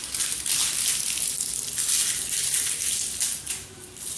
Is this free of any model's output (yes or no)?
yes